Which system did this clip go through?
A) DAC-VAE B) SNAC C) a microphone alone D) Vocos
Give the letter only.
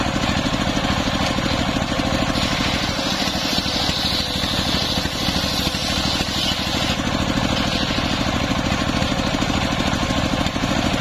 C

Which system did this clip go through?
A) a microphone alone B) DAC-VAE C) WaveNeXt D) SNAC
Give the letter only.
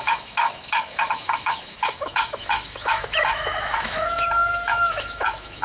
B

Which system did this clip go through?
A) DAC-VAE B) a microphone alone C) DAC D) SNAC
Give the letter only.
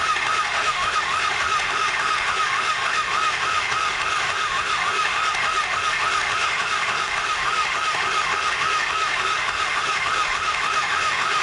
A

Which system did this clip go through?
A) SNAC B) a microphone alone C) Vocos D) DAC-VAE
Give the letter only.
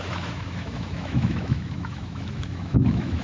D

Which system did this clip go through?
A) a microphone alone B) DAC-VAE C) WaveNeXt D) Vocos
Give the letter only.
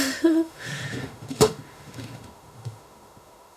B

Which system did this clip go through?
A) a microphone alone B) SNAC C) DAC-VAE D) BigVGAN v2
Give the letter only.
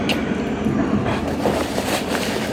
A